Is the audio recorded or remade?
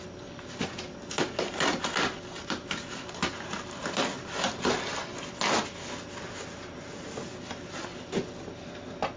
recorded